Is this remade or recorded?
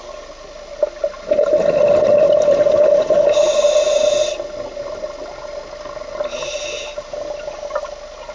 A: recorded